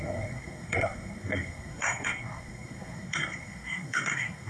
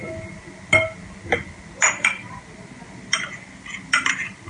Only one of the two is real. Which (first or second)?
second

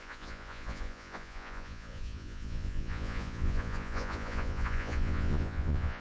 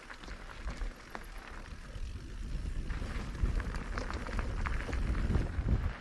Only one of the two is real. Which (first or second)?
second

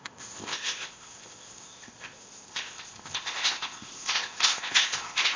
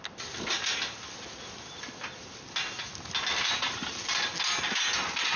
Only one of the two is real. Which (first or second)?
second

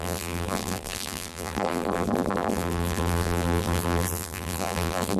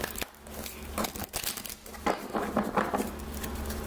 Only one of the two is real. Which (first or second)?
second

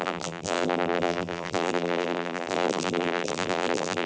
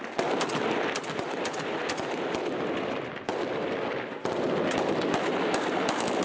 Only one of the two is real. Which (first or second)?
second